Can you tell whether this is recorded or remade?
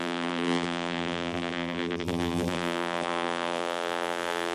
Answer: remade